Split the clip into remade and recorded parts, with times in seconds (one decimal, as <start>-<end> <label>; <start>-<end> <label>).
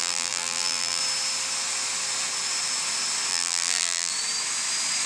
0.0-1.0 remade; 1.0-3.3 recorded; 3.3-4.1 remade; 4.1-5.1 recorded